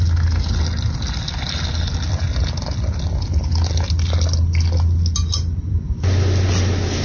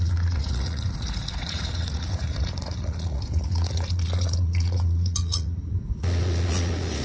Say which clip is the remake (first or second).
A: second